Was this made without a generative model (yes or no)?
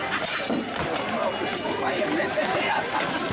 yes